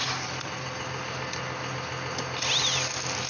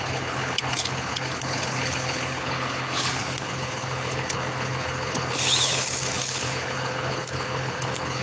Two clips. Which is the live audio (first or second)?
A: first